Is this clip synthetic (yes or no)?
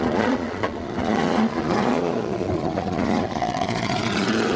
yes